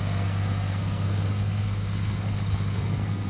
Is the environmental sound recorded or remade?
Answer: remade